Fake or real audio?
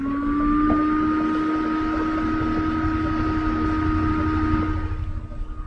real